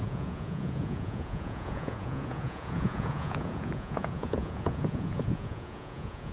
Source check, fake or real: fake